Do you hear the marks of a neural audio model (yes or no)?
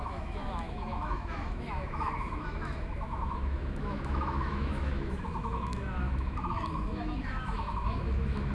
yes